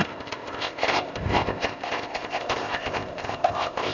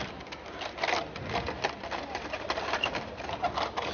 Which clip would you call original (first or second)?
second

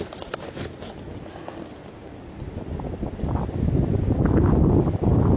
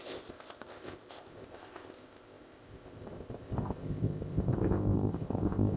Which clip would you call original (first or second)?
first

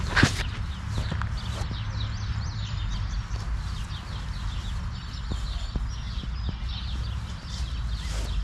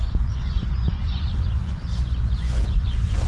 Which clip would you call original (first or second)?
first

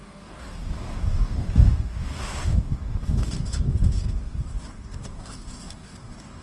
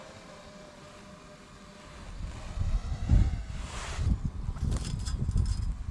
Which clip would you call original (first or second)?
second